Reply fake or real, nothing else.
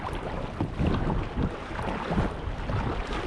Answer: real